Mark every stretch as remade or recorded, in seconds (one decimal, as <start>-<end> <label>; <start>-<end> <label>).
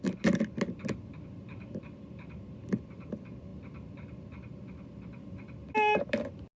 0.0-6.6 recorded